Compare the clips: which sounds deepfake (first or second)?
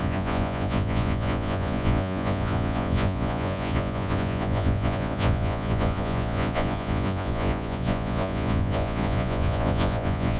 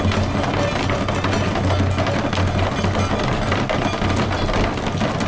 first